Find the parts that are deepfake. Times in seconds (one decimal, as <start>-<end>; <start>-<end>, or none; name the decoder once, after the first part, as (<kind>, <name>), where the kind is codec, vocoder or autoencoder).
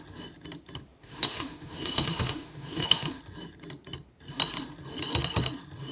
1.0-3.2 (autoencoder, DAC-VAE)